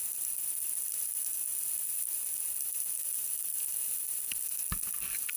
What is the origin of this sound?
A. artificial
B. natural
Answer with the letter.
B